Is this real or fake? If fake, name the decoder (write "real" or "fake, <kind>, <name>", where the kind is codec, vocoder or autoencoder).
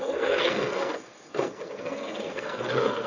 fake, codec, SNAC